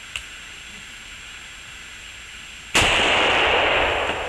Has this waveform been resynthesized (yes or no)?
no